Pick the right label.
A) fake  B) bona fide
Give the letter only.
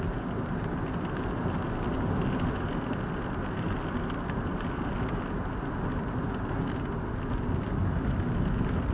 B